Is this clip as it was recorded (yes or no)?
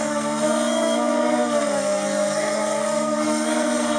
no